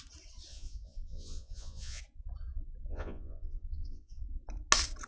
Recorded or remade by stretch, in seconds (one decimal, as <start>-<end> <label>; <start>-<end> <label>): 0.0-0.5 recorded; 0.5-2.0 remade; 2.0-2.9 recorded; 2.9-4.2 remade; 4.2-5.1 recorded